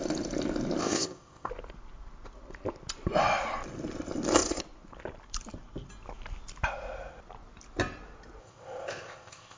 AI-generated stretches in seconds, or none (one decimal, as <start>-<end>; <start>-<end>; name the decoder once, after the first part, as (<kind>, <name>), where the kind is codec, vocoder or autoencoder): 0.8-1.5 (codec, ZipCodec); 8.4-9.6